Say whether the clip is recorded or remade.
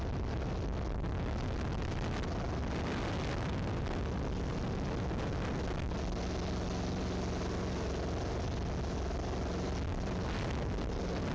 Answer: recorded